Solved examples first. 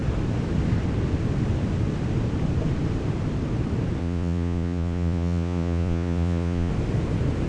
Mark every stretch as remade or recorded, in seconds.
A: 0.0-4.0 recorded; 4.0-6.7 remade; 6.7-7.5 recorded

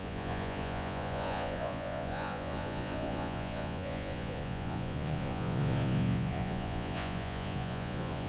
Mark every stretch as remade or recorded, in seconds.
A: 0.0-8.3 remade

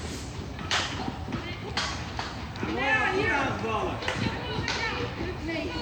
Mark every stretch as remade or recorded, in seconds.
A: 0.0-5.8 recorded